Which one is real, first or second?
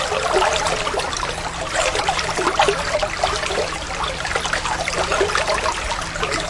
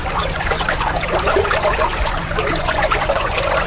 first